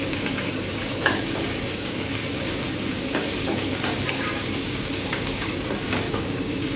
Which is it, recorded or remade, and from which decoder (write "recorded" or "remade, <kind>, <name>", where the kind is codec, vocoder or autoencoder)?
remade, codec, DAC